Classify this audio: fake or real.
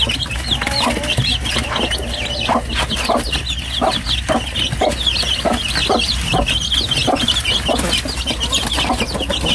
real